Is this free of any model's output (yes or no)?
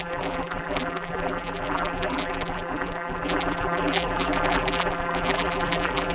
no